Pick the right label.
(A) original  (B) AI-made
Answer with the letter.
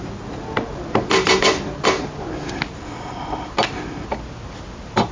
A